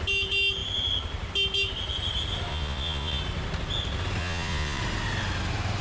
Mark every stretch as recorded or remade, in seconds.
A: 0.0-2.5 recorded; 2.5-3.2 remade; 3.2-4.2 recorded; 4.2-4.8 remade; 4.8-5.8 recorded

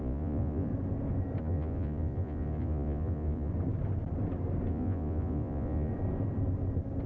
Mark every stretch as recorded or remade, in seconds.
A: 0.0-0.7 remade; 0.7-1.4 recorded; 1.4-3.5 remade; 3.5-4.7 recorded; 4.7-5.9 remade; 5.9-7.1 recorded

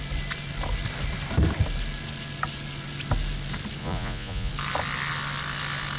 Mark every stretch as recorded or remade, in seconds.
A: 0.0-3.8 recorded; 3.8-4.5 remade; 4.5-6.0 recorded

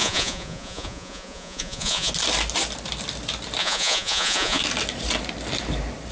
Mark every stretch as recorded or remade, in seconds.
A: 0.0-2.1 remade; 2.1-3.6 recorded; 3.6-4.6 remade; 4.6-6.1 recorded